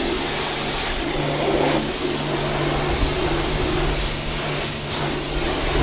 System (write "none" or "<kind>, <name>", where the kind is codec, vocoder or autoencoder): none